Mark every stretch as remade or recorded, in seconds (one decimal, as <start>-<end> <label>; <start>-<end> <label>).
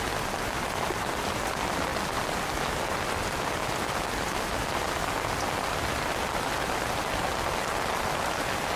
0.0-8.8 recorded